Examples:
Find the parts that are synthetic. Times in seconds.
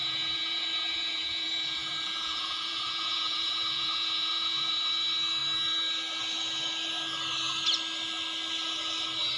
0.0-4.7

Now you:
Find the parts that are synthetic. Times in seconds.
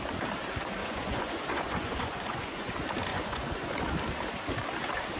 0.8-2.7; 3.1-3.7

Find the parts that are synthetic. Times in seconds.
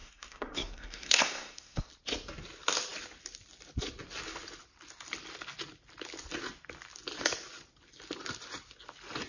0.0-1.9